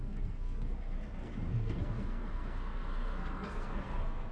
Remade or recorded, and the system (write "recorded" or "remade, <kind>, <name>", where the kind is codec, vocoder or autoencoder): remade, codec, SNAC